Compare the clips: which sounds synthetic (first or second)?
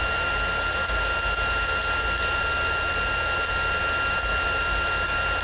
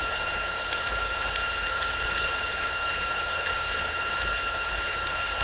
second